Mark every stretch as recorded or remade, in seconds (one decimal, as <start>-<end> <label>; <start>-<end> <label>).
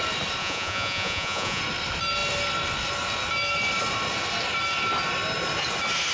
0.0-0.4 recorded; 0.4-1.6 remade; 1.6-6.1 recorded